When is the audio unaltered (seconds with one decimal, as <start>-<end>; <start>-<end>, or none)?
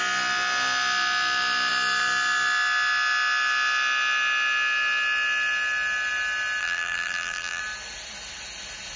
0.0-6.6; 7.6-9.0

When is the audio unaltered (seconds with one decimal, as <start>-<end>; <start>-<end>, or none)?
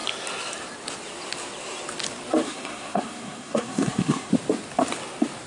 0.0-2.4; 4.3-5.5